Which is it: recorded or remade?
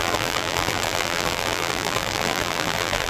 remade